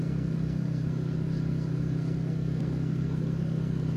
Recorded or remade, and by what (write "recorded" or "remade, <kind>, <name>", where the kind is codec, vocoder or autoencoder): remade, codec, SNAC